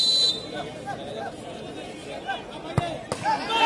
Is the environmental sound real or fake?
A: real